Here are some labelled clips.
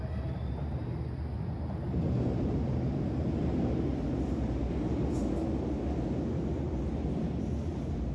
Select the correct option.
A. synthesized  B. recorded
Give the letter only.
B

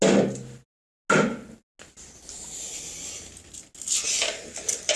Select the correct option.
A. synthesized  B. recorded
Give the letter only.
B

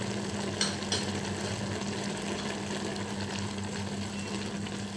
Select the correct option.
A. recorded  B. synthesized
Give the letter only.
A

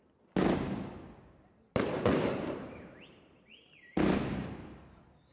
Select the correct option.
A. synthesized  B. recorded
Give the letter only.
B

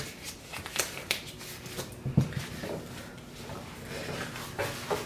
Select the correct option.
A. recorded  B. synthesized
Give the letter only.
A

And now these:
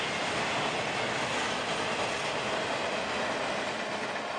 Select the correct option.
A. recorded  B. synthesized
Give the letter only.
A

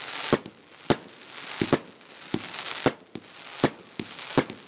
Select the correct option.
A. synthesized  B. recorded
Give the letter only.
B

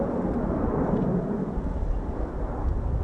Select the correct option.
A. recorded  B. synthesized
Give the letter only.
A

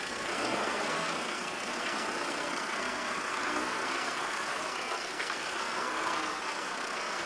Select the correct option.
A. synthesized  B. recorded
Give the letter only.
A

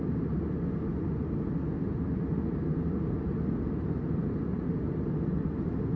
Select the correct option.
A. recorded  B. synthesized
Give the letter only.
A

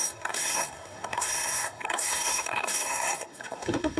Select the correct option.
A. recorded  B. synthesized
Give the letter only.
B